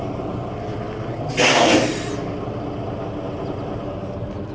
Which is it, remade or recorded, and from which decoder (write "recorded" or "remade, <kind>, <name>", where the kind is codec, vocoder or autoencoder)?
recorded